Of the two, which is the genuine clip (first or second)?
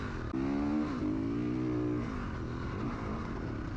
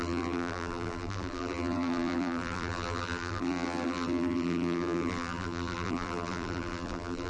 first